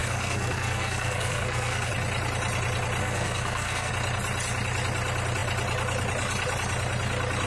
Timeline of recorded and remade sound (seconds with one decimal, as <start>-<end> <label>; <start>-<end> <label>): 0.0-1.9 remade; 1.9-3.0 recorded; 3.0-3.9 remade; 3.9-7.5 recorded